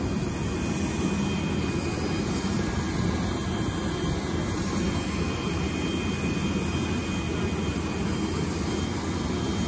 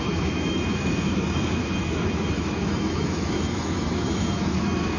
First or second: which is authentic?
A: first